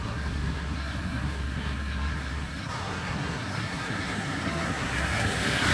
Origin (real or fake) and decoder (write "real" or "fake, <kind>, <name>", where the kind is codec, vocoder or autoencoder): fake, codec, SNAC